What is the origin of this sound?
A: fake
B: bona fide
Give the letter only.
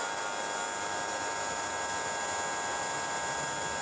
B